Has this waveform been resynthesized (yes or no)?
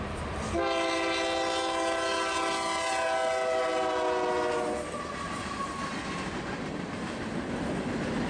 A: no